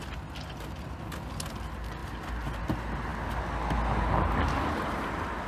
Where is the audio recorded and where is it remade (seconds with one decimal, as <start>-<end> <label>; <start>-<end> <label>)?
0.0-5.5 recorded